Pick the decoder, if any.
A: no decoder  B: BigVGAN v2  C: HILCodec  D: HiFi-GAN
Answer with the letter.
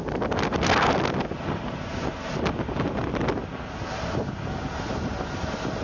A